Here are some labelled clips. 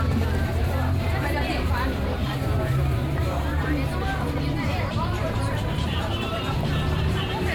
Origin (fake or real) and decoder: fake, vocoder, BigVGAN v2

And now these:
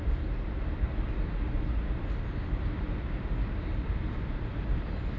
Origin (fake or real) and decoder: real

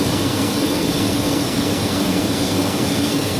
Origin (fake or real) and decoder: fake, codec, SNAC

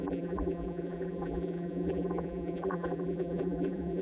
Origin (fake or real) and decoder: fake, vocoder, BigVGAN v2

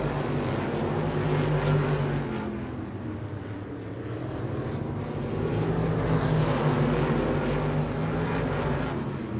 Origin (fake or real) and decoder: real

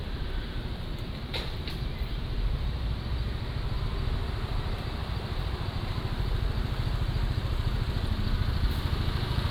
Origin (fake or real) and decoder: fake, vocoder, BigVGAN v2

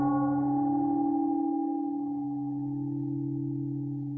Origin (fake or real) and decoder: fake, autoencoder, DAC-VAE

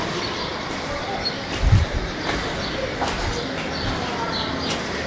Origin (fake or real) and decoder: real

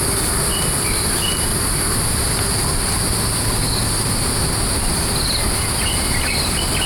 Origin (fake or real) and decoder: real